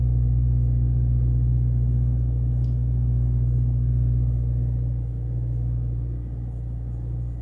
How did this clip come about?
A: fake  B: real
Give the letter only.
B